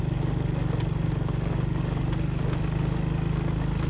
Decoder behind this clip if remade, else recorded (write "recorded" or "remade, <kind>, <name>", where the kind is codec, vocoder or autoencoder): recorded